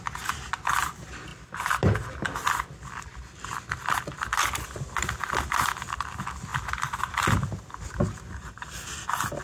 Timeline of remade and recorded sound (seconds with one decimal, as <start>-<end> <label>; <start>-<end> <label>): 0.0-9.4 recorded